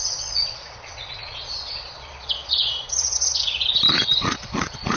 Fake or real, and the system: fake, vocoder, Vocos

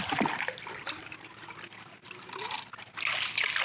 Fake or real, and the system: real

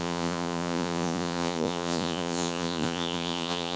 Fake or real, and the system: fake, vocoder, Vocos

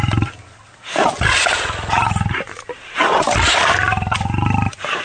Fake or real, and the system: real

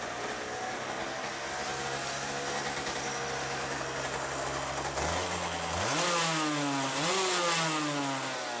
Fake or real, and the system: real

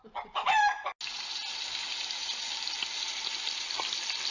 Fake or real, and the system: real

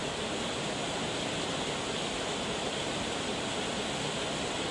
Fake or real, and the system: real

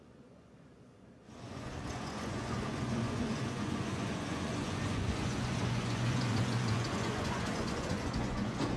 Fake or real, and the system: fake, vocoder, Vocos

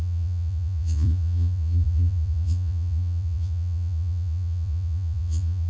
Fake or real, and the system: fake, vocoder, Vocos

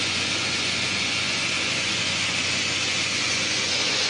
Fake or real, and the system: fake, vocoder, Vocos